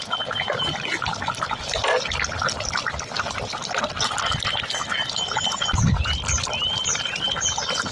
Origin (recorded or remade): recorded